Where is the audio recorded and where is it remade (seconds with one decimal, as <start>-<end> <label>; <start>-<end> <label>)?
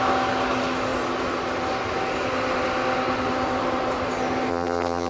0.0-4.5 recorded; 4.5-5.1 remade